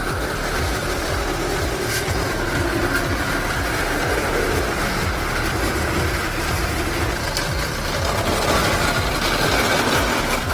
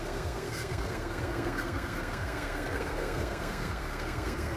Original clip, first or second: first